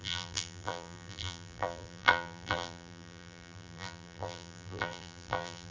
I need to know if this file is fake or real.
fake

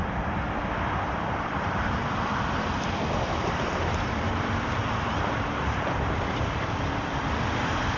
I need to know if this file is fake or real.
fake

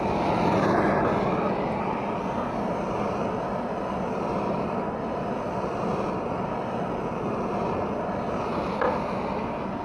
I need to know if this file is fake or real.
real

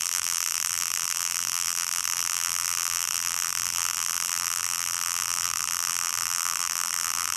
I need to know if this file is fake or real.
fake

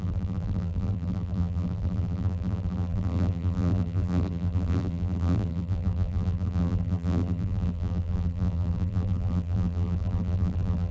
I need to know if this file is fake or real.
fake